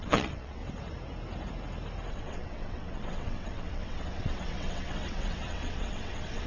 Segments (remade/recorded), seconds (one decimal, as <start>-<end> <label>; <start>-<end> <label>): 0.0-0.6 remade; 0.6-2.1 recorded; 2.1-6.5 remade